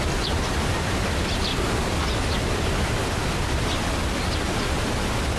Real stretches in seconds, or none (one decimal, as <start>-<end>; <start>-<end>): 0.0-1.5; 2.0-5.4